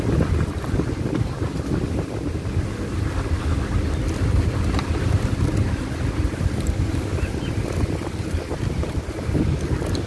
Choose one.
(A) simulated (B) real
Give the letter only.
B